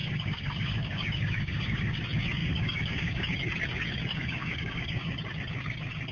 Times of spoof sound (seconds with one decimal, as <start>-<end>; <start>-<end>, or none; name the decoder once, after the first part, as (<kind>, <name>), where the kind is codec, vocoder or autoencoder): 0.0-2.0 (codec, DAC); 2.4-3.2; 4.2-5.2